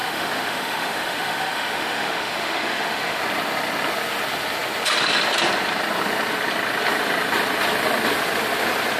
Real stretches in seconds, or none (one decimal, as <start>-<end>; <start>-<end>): 3.2-9.0